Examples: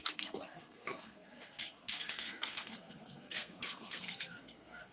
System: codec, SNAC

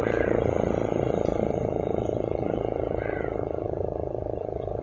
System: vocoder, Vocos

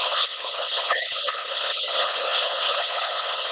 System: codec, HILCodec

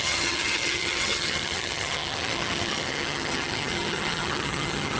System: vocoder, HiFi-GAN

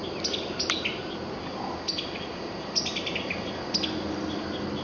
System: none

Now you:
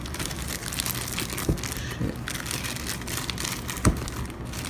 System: none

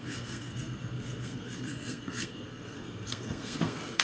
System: codec, SNAC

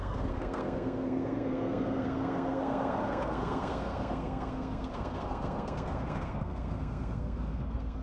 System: codec, SNAC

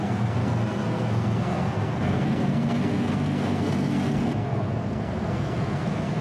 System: codec, SNAC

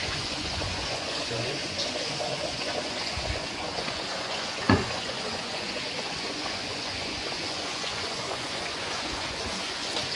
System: vocoder, Vocos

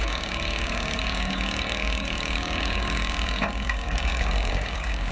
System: codec, DAC